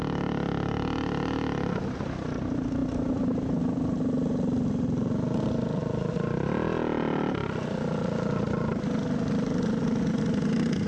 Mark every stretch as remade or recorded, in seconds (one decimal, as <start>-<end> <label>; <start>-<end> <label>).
0.0-10.9 recorded